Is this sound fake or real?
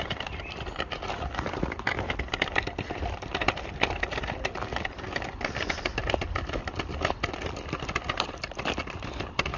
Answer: fake